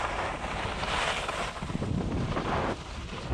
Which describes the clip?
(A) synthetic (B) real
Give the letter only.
B